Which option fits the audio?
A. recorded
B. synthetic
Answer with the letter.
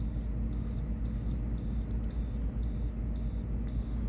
A